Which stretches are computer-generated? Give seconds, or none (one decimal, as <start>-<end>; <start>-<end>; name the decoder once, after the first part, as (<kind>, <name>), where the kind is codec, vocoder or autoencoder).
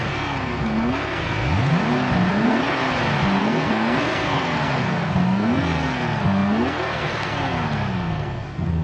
0.0-1.7 (codec, SNAC); 2.3-2.8; 3.4-8.8